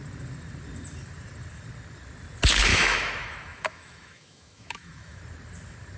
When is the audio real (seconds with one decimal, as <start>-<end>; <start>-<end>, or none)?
0.0-2.7; 5.2-6.0